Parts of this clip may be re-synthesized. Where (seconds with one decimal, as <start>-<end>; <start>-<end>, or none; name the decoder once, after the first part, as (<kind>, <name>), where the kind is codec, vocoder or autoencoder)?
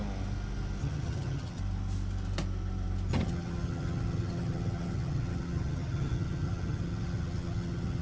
0.8-1.6 (vocoder, HiFi-GAN); 3.1-8.0